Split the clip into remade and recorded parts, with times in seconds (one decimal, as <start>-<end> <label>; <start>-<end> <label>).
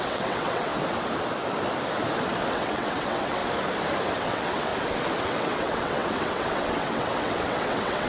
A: 0.0-0.7 remade; 0.7-2.5 recorded; 2.5-3.4 remade; 3.4-4.2 recorded; 4.2-4.7 remade; 4.7-5.2 recorded; 5.2-8.1 remade